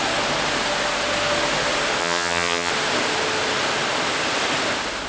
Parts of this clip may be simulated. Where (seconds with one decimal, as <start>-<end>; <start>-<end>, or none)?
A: 2.0-2.7